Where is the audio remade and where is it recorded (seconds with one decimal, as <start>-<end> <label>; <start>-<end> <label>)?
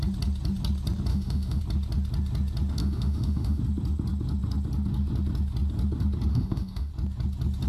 0.0-1.1 recorded; 1.1-1.6 remade; 1.6-2.8 recorded; 2.8-3.6 remade; 3.6-6.3 recorded; 6.3-6.9 remade; 6.9-7.7 recorded